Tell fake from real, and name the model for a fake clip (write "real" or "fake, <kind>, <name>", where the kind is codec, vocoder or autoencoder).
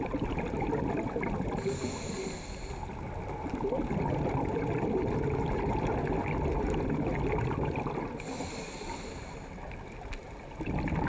real